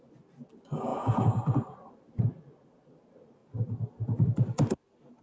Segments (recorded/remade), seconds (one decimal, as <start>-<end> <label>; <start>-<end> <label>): 0.0-3.4 recorded; 3.4-5.2 remade